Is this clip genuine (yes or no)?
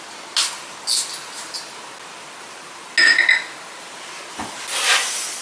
yes